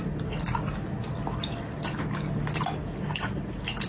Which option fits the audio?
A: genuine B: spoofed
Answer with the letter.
A